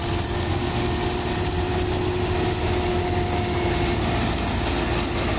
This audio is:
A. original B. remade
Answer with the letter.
A